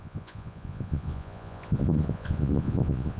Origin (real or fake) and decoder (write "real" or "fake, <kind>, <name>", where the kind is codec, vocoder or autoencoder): fake, vocoder, Vocos